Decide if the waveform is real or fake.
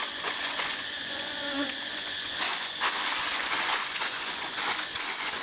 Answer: fake